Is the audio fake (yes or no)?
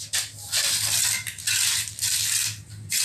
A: no